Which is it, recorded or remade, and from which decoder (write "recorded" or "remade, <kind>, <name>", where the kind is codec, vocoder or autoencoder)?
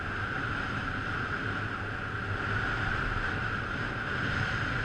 recorded